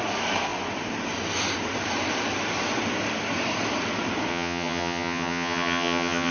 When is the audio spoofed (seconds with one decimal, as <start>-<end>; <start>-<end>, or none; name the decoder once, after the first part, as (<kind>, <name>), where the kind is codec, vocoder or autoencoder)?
4.3-6.3 (vocoder, HiFi-GAN)